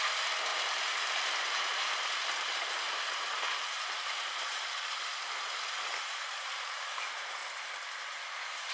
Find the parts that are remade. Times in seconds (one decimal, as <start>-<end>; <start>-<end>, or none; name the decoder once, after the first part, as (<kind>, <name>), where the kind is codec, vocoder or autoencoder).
0.0-7.4 (vocoder, BigVGAN v2)